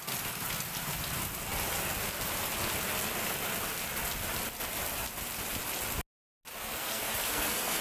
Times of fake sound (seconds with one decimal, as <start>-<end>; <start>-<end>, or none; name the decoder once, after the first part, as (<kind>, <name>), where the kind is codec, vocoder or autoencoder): 6.5-7.8 (codec, SNAC)